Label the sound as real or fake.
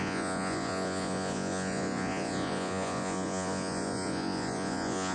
fake